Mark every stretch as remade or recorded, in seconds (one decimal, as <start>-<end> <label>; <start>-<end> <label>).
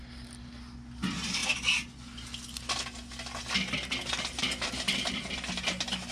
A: 0.0-6.1 recorded